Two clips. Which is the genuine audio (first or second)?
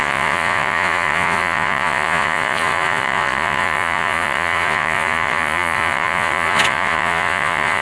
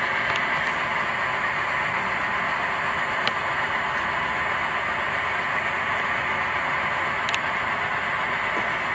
second